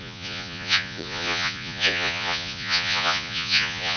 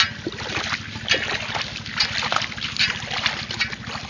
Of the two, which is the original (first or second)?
second